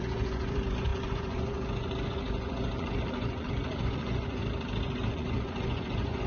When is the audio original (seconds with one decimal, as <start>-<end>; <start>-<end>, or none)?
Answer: 4.4-5.1